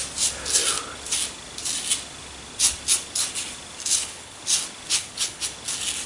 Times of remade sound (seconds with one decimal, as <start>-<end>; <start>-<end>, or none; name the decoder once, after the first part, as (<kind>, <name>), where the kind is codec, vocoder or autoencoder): 3.9-4.4 (codec, HILCodec); 4.9-5.4